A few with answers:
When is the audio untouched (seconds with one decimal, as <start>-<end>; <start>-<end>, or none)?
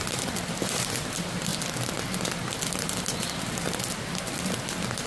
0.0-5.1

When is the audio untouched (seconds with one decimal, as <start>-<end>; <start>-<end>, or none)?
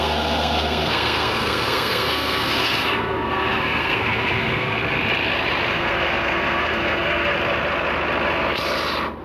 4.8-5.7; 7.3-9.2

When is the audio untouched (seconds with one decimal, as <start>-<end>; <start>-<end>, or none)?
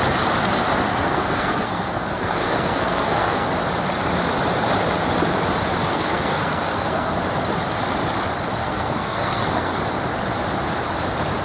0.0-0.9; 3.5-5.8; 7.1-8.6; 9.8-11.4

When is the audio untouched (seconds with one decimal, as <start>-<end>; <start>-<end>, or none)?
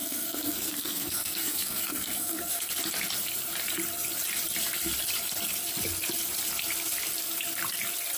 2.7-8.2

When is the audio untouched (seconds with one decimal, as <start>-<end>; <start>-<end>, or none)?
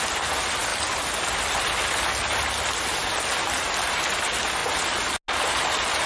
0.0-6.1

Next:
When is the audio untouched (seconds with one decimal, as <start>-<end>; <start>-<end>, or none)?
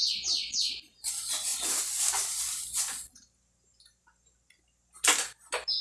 0.0-5.8